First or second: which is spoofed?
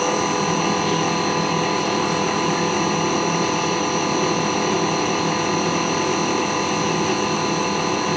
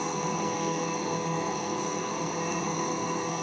second